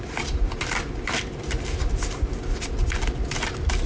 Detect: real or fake real